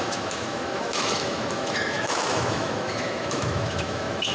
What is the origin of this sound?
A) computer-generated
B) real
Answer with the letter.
A